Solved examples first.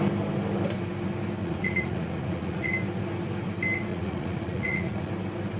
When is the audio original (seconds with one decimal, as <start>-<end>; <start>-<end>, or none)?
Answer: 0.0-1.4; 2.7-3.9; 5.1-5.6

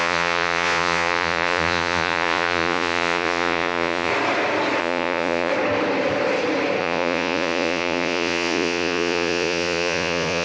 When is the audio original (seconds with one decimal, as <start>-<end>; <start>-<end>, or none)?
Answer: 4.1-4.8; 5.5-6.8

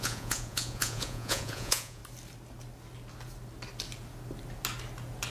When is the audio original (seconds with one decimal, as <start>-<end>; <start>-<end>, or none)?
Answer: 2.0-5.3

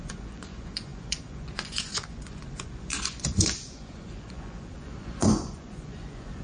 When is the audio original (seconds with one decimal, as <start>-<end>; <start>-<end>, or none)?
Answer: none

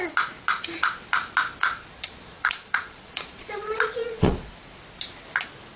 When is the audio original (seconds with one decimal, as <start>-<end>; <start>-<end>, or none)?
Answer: 0.0-1.6; 4.5-5.8